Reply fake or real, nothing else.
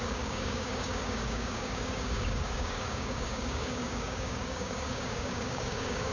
fake